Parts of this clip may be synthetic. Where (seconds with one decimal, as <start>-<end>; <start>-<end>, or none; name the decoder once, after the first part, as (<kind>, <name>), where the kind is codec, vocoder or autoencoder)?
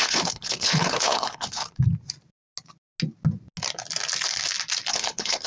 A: 0.0-1.6 (codec, HILCodec); 4.9-5.5